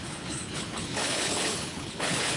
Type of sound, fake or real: fake